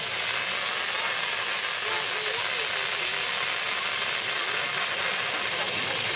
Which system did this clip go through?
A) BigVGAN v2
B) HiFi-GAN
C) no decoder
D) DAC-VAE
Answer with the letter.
C